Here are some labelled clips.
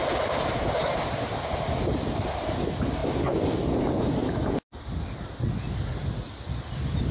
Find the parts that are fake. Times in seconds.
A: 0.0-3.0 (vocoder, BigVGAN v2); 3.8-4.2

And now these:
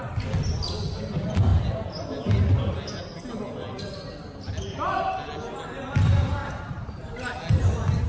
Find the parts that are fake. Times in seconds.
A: 1.5-3.0 (vocoder, BigVGAN v2); 6.4-6.9

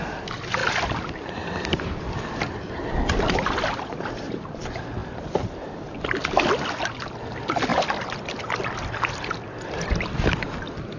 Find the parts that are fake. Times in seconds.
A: 0.6-4.6 (vocoder, BigVGAN v2); 5.0-6.5

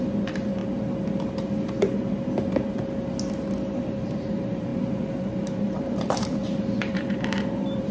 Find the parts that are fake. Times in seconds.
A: 0.0-0.6 (vocoder, BigVGAN v2); 3.7-7.9

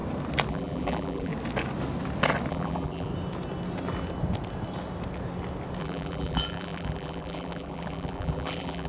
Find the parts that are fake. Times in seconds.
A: 0.5-1.3 (vocoder, BigVGAN v2); 2.5-3.1; 5.8-8.9

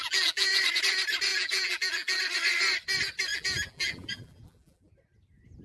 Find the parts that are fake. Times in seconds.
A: 0.0-0.5 (vocoder, BigVGAN v2); 1.3-2.2; 3.3-4.9